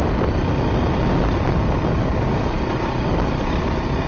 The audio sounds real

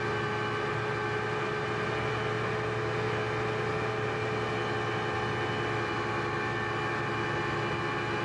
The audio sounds real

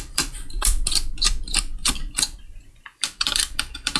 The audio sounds fake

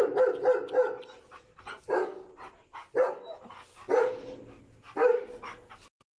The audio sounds real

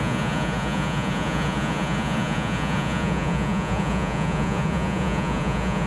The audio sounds fake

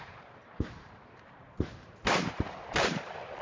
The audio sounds fake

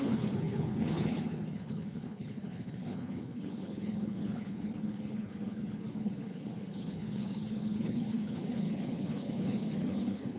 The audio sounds fake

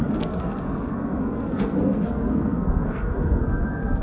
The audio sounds fake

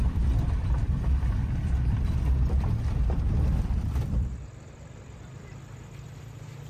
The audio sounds fake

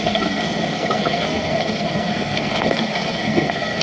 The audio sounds fake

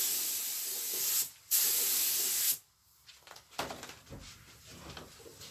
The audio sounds real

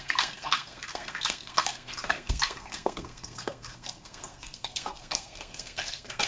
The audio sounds fake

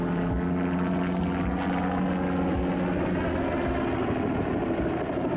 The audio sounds real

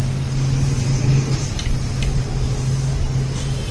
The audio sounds real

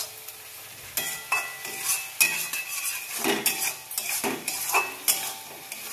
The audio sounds real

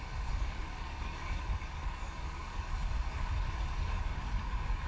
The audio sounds fake